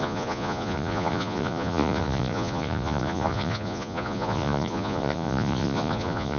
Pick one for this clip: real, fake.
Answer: fake